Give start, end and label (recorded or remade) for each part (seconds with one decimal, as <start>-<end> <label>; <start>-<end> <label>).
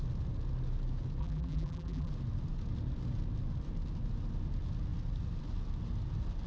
0.0-1.2 recorded; 1.2-2.1 remade; 2.1-6.5 recorded